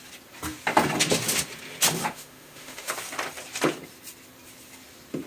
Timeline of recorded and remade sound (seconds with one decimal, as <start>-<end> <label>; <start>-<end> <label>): 0.0-2.0 recorded; 2.0-2.9 remade; 2.9-5.3 recorded